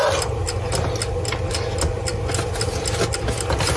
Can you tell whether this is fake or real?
real